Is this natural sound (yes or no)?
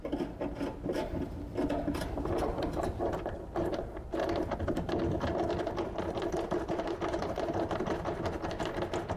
yes